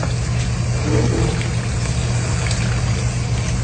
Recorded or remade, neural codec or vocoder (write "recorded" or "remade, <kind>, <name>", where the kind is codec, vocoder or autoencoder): recorded